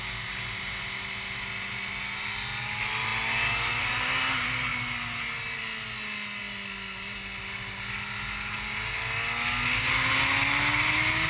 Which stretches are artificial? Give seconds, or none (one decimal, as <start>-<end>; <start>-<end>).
none